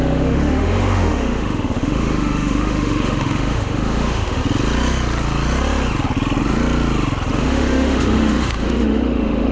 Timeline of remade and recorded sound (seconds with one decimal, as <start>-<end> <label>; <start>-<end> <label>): 0.0-4.4 remade; 4.4-7.3 recorded; 7.3-9.5 remade